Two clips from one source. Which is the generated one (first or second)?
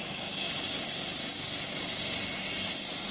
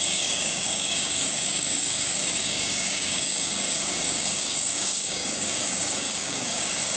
second